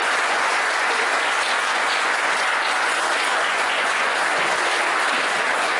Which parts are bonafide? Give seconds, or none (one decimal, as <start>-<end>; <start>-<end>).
4.7-5.2